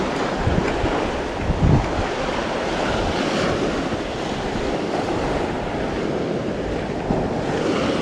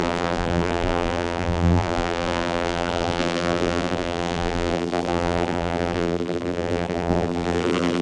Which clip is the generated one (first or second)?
second